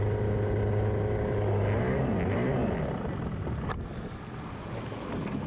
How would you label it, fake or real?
real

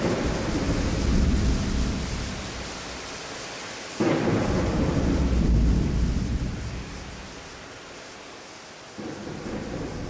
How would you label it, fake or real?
real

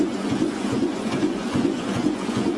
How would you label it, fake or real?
fake